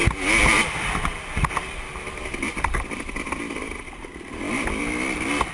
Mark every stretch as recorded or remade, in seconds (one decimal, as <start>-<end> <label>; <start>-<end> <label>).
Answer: 0.0-5.5 recorded